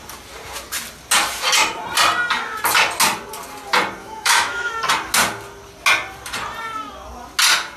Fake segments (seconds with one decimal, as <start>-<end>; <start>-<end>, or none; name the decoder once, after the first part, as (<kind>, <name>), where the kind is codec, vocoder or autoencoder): 4.0-4.7 (autoencoder, DAC-VAE)